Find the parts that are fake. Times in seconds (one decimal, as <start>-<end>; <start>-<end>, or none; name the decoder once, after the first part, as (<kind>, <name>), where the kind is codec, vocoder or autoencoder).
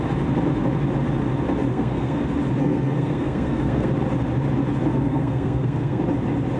1.7-2.2 (codec, SNAC); 2.6-3.9; 4.9-6.0